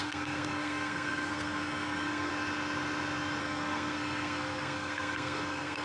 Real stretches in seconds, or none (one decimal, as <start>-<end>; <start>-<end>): 2.3-3.4